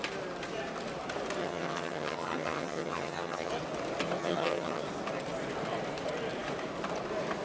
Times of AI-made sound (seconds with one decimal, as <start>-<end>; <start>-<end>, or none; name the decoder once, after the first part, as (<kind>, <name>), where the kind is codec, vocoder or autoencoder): 1.4-3.5 (vocoder, HiFi-GAN); 4.2-4.8